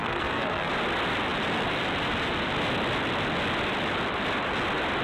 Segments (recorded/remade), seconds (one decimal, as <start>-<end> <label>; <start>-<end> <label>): 0.0-0.7 remade; 0.7-5.0 recorded